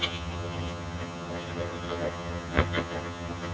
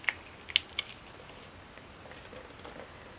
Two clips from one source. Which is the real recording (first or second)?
second